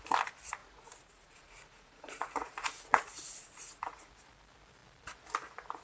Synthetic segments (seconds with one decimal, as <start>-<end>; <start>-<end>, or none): 0.6-4.1